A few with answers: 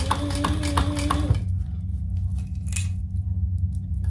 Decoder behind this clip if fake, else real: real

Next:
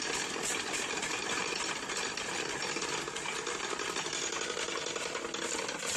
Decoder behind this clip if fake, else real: real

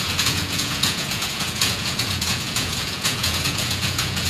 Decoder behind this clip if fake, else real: fake, vocoder, Vocos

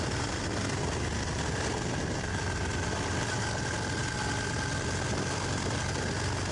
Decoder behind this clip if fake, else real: real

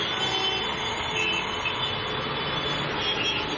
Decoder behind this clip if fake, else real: real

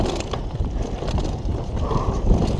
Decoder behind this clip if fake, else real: real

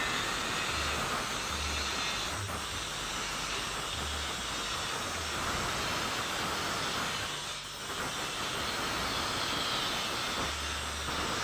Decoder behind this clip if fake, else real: real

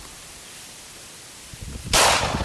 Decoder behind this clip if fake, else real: fake, vocoder, BigVGAN v2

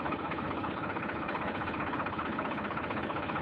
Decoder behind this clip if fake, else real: fake, codec, HILCodec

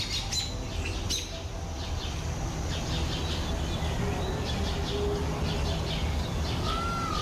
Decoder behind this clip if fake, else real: real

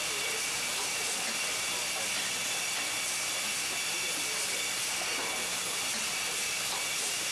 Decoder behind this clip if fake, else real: real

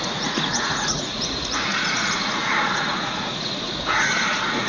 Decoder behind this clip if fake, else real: fake, vocoder, Vocos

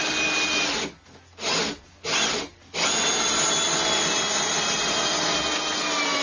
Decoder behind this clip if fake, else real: real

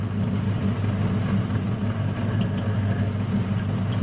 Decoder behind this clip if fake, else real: real